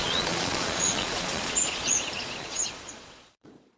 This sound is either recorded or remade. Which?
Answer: remade